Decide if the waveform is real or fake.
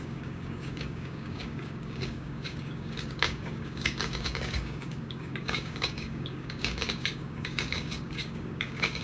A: fake